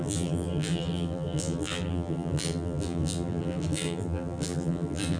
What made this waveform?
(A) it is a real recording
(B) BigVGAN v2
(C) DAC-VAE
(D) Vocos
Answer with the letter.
B